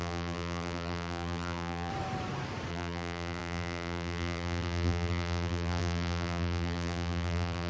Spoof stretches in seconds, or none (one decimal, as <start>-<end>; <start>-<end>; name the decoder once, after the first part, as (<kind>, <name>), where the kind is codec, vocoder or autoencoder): 0.0-1.9 (vocoder, BigVGAN v2); 2.7-7.7